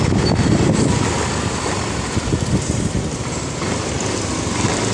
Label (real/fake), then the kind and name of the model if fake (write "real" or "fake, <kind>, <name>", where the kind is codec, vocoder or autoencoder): real